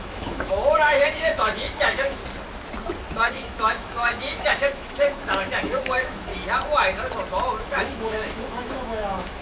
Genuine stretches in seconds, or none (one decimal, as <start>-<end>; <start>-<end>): 2.2-3.3; 6.3-7.6